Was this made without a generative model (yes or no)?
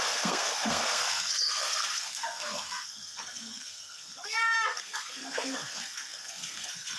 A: no